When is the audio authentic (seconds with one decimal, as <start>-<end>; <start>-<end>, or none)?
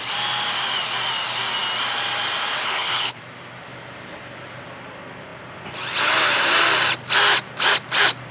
0.0-2.6; 3.2-8.3